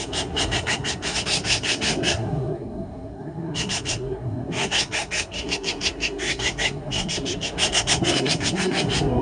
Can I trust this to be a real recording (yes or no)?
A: no